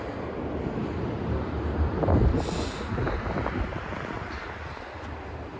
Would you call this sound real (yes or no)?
yes